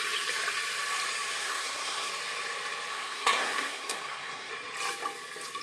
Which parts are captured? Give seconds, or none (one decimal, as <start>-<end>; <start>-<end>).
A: 0.0-1.4; 2.1-2.9; 4.5-5.6